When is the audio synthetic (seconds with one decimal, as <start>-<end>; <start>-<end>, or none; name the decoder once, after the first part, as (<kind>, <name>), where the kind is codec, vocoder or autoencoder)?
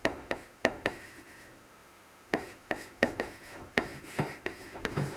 0.0-5.2 (autoencoder, DAC-VAE)